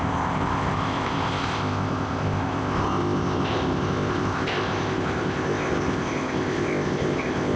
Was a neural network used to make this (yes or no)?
yes